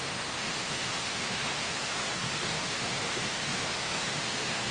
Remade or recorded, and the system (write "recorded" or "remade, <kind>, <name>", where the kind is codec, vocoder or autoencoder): remade, autoencoder, DAC-VAE